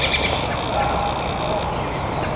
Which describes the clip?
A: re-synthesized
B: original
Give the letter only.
B